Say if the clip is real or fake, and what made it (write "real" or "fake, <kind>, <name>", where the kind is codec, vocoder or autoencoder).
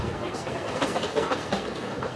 fake, codec, SNAC